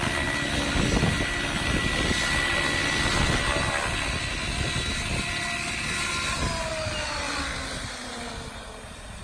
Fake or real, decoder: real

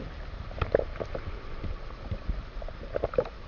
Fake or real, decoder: real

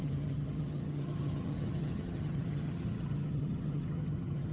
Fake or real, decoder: fake, vocoder, HiFi-GAN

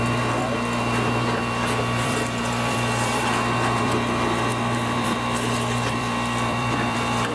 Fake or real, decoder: fake, vocoder, BigVGAN v2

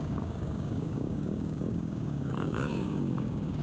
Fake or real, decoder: fake, codec, DAC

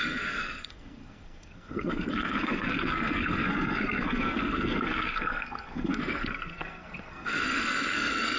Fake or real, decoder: fake, codec, SNAC